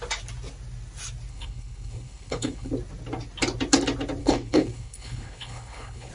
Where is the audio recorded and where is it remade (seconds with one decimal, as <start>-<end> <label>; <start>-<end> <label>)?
0.0-1.3 recorded; 1.3-2.7 remade; 2.7-4.2 recorded; 4.2-6.1 remade